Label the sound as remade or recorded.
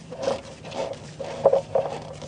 remade